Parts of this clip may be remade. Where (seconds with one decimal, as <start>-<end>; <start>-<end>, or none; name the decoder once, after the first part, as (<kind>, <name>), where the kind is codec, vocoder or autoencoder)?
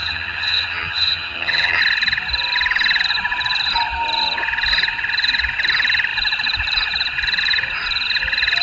0.0-1.8 (vocoder, HiFi-GAN)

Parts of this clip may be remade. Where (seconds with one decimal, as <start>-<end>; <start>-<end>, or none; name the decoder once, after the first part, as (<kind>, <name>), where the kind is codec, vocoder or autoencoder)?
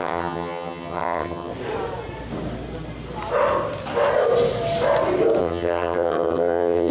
0.0-1.5 (vocoder, HiFi-GAN); 5.4-6.9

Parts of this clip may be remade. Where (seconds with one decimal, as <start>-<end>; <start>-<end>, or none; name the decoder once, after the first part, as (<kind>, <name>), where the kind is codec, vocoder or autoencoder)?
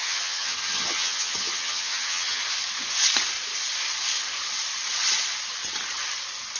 0.0-2.4 (vocoder, HiFi-GAN)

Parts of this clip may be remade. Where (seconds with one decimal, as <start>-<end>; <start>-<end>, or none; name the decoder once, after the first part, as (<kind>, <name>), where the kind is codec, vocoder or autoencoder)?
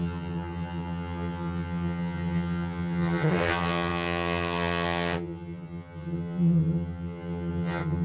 0.0-8.0 (vocoder, HiFi-GAN)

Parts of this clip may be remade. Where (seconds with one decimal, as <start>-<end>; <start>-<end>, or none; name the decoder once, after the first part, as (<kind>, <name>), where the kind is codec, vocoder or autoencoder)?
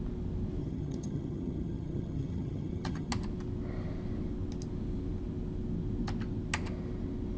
0.6-3.1 (vocoder, HiFi-GAN)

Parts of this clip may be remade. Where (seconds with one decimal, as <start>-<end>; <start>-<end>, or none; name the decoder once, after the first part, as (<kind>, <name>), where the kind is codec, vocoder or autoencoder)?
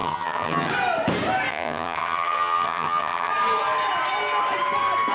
0.0-0.7 (vocoder, HiFi-GAN); 1.5-3.3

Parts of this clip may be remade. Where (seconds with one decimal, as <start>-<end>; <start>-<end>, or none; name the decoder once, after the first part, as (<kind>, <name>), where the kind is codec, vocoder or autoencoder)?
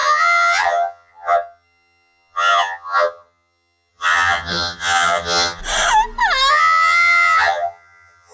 0.0-5.6 (vocoder, HiFi-GAN); 6.5-8.3